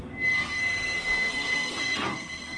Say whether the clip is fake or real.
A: fake